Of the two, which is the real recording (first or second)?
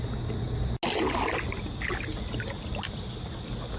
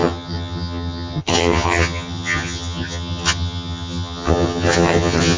first